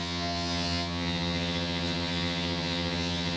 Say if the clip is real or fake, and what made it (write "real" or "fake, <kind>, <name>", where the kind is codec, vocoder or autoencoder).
fake, vocoder, HiFi-GAN